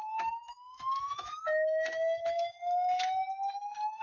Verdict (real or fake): fake